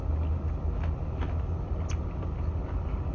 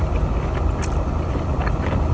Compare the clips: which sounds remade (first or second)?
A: second